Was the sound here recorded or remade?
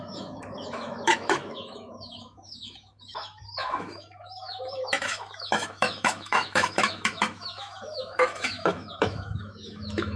remade